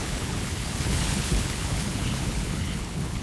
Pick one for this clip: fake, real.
fake